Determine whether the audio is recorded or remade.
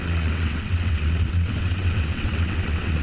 remade